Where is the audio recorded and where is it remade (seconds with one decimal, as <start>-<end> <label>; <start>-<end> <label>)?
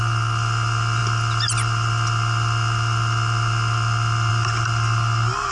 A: 0.0-5.5 recorded